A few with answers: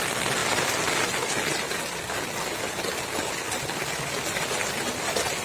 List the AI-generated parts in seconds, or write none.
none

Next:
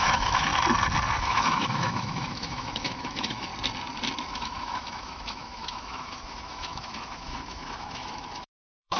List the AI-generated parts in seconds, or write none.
0.0-0.5 (autoencoder, DAC-VAE); 1.2-3.5; 4.3-9.0

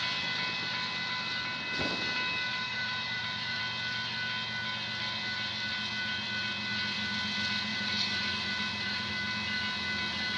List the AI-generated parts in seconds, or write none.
2.5-3.6 (vocoder, BigVGAN v2); 7.7-9.1

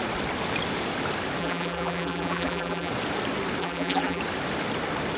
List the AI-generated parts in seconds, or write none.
1.4-2.9 (vocoder, BigVGAN v2); 3.6-4.2

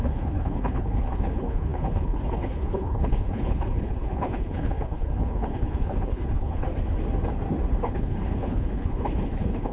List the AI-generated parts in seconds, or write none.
0.0-6.7 (codec, HILCodec); 7.8-9.7

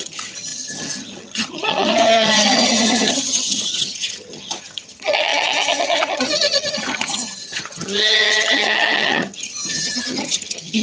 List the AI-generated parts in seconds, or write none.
0.0-10.8 (vocoder, HiFi-GAN)